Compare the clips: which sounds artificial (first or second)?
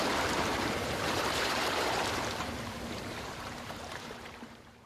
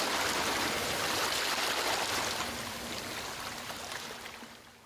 first